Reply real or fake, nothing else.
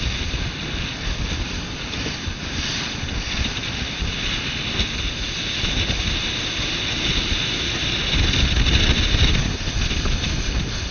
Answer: real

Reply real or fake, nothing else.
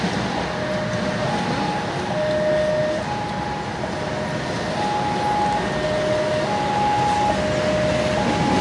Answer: real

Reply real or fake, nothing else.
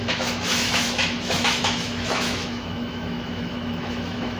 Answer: fake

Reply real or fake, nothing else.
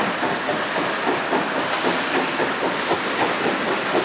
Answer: real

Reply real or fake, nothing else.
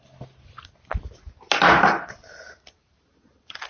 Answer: real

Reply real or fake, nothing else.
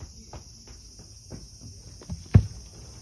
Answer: real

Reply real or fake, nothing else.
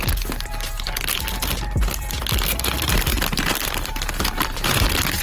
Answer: fake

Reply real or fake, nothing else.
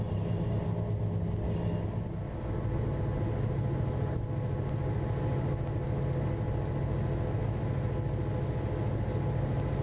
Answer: real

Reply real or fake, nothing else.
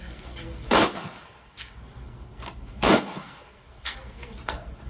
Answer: fake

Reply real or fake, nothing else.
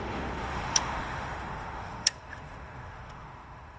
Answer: fake